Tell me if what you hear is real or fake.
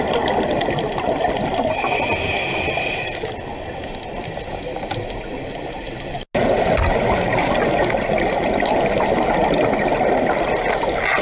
real